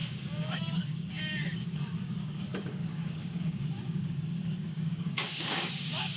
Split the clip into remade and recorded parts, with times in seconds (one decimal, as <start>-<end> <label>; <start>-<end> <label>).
0.0-6.2 remade